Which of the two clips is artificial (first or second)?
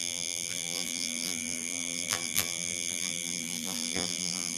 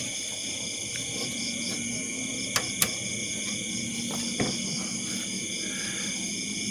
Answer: first